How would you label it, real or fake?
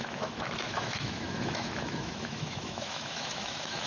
fake